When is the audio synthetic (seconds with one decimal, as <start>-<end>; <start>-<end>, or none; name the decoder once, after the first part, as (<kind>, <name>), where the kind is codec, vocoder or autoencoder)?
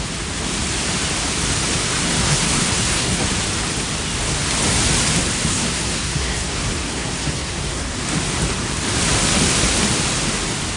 2.0-3.3 (codec, SNAC); 5.5-8.0